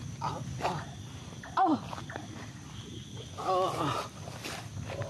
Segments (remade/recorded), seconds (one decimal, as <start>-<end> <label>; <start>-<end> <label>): 0.0-5.1 recorded